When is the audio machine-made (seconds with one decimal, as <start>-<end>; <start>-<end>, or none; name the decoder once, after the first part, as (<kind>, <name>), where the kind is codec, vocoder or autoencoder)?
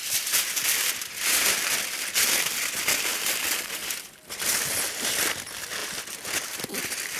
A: 0.0-1.1 (vocoder, BigVGAN v2); 3.1-3.7; 5.8-6.8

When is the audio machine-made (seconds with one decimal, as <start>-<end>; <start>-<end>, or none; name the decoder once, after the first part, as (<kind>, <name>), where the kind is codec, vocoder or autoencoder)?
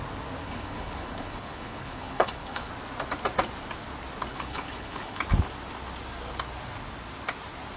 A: 0.4-2.7 (codec, HILCodec); 4.3-5.2